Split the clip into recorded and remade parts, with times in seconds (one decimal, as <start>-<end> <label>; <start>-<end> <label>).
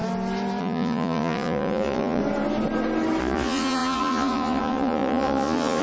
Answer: 0.0-0.6 recorded; 0.6-2.2 remade; 2.2-3.2 recorded; 3.2-5.8 remade